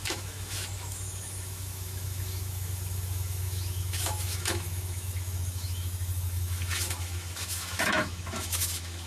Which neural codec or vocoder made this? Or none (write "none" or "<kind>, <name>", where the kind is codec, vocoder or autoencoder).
autoencoder, DAC-VAE